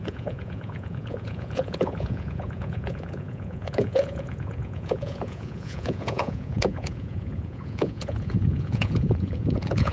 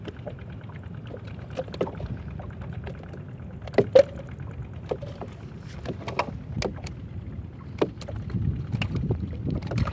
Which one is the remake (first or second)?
first